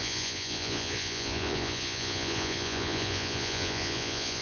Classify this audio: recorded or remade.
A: remade